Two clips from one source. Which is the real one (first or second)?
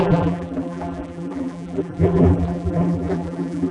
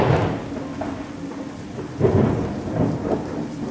second